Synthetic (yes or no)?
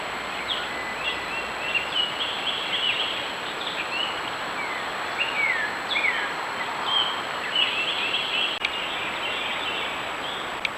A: no